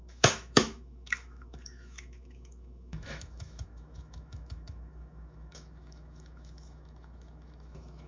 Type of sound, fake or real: fake